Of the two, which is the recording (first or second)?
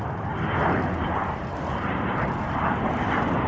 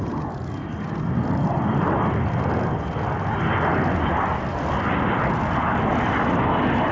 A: second